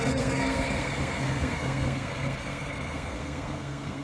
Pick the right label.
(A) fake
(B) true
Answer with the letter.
A